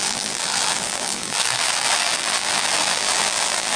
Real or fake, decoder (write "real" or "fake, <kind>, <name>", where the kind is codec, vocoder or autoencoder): fake, vocoder, BigVGAN v2